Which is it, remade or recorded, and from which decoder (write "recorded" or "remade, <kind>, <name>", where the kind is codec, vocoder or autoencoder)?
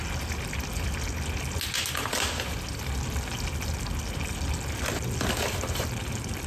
recorded